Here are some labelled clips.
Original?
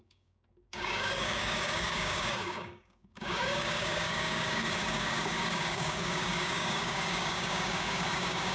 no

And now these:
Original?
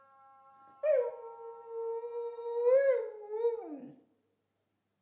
yes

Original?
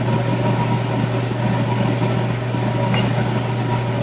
yes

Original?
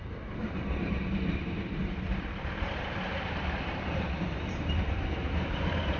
no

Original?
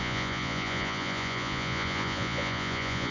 no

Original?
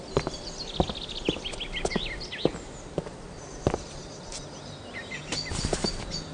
yes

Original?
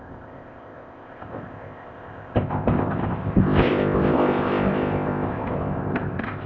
no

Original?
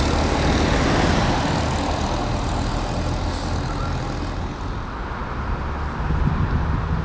yes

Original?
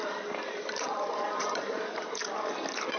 no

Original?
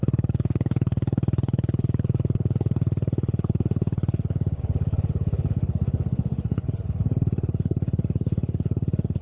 no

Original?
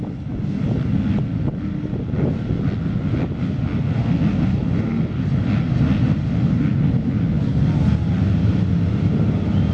yes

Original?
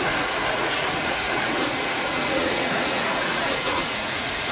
no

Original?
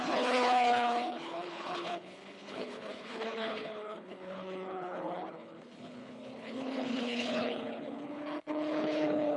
no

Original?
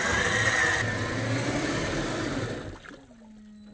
yes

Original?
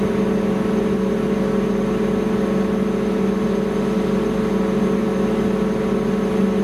yes